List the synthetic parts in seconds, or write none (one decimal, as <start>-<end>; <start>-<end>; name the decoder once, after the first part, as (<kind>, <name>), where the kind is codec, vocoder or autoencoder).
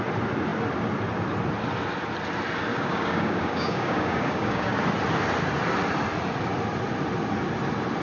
2.7-4.8 (codec, DAC)